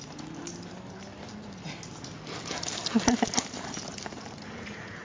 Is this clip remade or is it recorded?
recorded